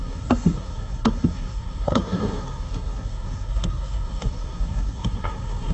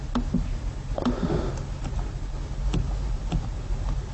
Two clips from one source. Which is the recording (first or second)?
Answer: second